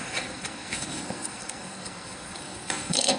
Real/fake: fake